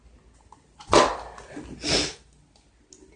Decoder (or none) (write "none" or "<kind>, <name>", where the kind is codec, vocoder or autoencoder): none